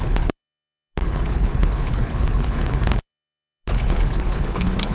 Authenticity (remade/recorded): remade